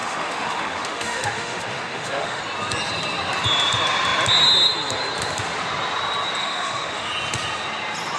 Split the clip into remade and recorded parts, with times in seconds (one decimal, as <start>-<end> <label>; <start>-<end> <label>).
0.0-2.4 remade; 2.4-6.4 recorded; 6.4-7.1 remade; 7.1-8.2 recorded